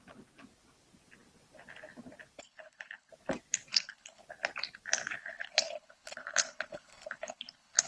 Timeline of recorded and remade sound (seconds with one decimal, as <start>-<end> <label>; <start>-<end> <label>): 0.0-2.4 recorded; 2.4-3.1 remade; 3.1-3.7 recorded; 3.7-4.2 remade; 4.2-5.2 recorded; 5.2-7.9 remade